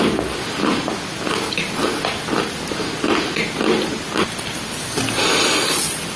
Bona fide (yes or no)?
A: yes